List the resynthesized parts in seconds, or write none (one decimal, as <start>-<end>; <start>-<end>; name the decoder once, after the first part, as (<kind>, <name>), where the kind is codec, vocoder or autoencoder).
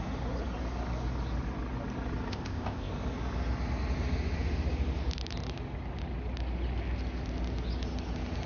2.3-2.9 (codec, ZipCodec)